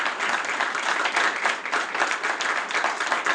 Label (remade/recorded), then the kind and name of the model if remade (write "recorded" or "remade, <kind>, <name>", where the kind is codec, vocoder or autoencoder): recorded